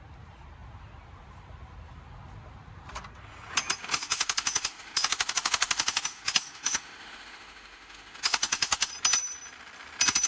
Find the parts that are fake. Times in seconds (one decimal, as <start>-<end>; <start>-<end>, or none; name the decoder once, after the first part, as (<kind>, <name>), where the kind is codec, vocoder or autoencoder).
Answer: 3.9-8.9 (autoencoder, DAC-VAE)